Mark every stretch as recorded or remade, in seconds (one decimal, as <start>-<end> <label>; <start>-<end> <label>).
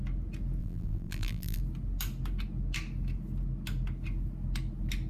0.0-0.6 recorded; 0.6-1.6 remade; 1.6-5.1 recorded